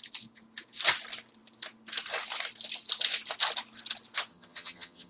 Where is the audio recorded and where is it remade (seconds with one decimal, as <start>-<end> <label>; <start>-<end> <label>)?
0.0-4.3 recorded; 4.3-5.1 remade